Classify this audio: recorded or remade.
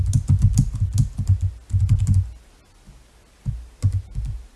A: recorded